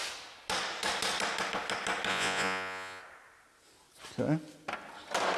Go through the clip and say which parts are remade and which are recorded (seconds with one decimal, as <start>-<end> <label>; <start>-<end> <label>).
0.0-2.1 recorded; 2.1-3.0 remade; 3.0-5.4 recorded